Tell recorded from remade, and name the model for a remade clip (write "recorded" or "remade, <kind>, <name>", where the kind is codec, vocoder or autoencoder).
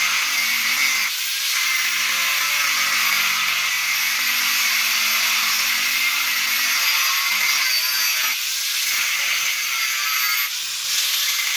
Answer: recorded